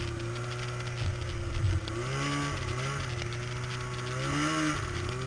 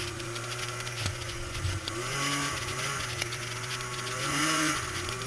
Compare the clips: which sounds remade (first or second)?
second